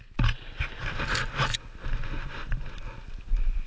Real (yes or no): yes